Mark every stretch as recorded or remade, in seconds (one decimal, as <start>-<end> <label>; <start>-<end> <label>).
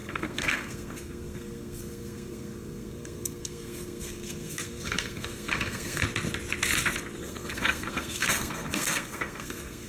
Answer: 0.0-6.0 remade; 6.0-7.2 recorded; 7.2-9.9 remade